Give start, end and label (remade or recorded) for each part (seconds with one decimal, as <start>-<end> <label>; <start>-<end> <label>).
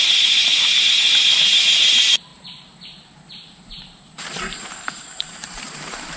0.0-2.3 recorded; 2.3-6.2 remade